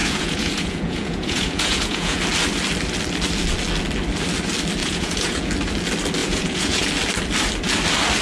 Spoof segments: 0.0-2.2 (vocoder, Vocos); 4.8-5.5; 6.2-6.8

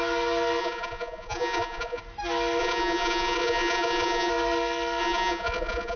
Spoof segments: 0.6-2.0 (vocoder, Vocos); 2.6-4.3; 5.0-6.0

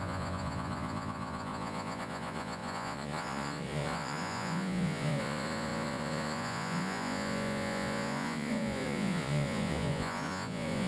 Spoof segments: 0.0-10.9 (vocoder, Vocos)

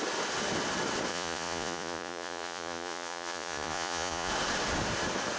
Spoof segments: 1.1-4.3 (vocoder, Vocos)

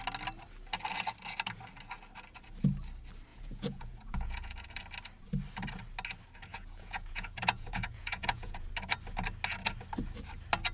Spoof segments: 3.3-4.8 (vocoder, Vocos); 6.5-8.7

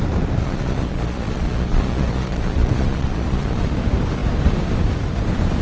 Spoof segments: 0.4-3.6 (vocoder, Vocos)

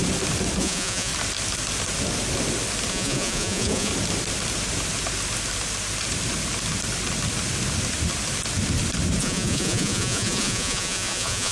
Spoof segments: 0.6-1.1 (vocoder, Vocos); 2.9-3.9; 9.2-11.5